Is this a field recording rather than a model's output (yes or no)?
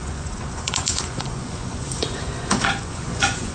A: no